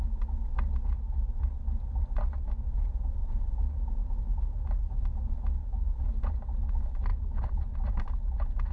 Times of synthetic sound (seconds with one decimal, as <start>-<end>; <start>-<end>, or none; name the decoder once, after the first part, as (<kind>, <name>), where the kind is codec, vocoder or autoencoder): 4.3-4.9 (vocoder, BigVGAN v2); 5.6-6.3; 7.1-7.7